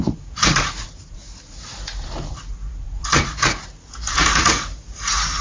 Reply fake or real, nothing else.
fake